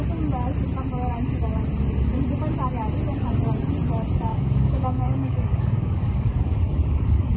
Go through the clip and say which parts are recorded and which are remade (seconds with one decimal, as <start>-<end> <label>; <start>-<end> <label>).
0.0-4.3 recorded; 4.3-7.4 remade